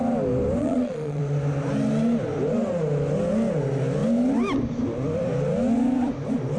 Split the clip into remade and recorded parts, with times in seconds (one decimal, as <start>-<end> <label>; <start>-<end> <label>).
0.0-0.6 recorded; 0.6-1.2 remade; 1.2-6.6 recorded